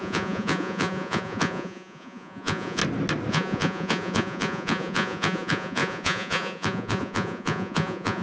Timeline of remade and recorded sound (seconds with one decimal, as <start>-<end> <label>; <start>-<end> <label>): 0.0-2.8 remade; 2.8-3.3 recorded; 3.3-8.2 remade